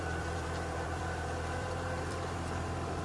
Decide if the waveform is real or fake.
fake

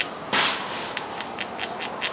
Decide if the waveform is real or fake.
real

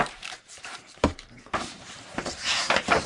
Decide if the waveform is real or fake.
fake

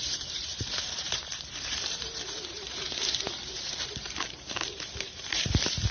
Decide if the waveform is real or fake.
fake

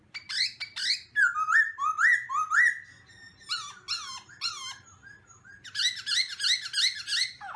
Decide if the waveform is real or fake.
real